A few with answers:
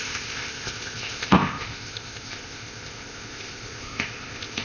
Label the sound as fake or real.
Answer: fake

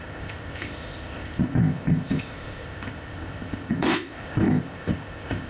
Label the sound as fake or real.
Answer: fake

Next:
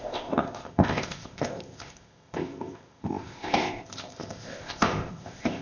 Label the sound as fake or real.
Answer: fake